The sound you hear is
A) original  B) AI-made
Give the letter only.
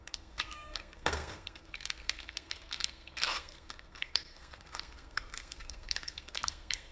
B